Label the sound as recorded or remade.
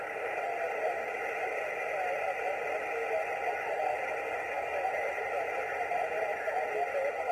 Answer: remade